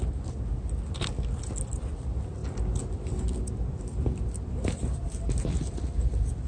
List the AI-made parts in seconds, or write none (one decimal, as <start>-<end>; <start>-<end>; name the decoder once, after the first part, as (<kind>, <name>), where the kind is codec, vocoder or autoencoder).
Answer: none